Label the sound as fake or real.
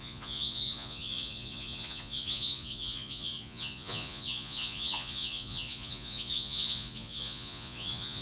fake